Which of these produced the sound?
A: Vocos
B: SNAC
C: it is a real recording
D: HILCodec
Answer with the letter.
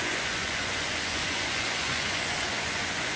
A